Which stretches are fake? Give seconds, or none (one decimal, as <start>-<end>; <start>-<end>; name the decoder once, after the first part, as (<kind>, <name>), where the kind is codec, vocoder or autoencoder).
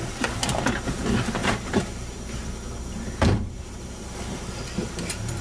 1.4-4.6 (vocoder, BigVGAN v2)